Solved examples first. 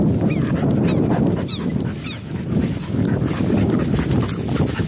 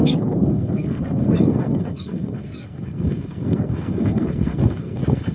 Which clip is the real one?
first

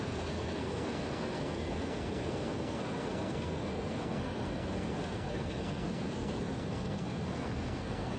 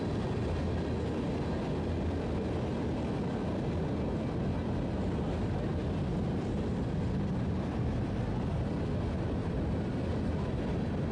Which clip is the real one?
second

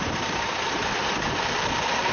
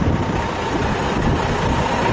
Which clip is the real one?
second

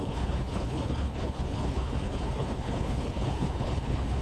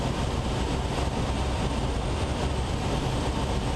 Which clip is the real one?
second